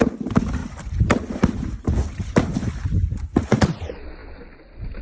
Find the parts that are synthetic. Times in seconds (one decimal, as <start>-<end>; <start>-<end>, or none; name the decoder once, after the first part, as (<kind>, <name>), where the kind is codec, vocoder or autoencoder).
none